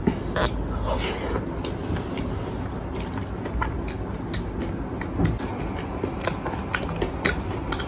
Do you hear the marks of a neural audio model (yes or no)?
no